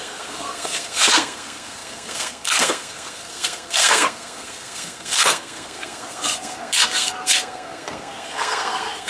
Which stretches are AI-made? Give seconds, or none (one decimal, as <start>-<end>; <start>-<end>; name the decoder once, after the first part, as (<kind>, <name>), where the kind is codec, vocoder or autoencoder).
0.0-9.1 (codec, SNAC)